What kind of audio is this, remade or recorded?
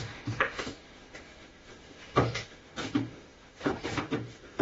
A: remade